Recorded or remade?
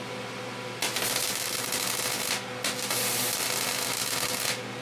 recorded